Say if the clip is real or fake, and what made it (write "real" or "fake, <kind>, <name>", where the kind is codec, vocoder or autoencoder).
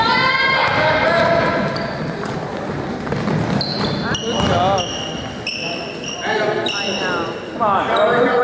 real